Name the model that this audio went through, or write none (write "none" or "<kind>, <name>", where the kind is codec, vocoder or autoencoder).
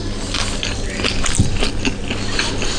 none